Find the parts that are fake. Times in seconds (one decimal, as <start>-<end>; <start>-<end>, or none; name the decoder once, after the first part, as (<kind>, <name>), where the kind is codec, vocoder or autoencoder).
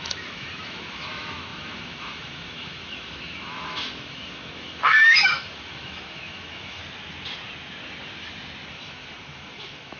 0.0-6.8 (autoencoder, DAC-VAE); 8.7-10.0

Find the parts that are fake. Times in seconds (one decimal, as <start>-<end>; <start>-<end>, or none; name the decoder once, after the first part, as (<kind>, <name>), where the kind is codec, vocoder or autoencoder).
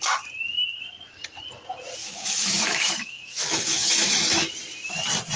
2.0-4.5 (autoencoder, DAC-VAE)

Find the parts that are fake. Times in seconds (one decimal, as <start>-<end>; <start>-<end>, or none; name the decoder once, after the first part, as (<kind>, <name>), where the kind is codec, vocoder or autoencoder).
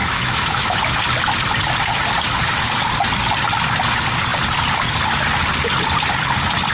0.0-1.0 (autoencoder, DAC-VAE)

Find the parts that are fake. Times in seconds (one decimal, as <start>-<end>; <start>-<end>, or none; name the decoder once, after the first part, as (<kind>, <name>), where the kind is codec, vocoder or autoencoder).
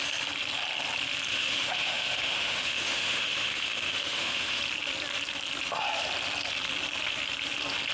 1.3-4.6 (autoencoder, DAC-VAE)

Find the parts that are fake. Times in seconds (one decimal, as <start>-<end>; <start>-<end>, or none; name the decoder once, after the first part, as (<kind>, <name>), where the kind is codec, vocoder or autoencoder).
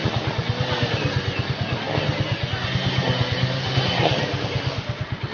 none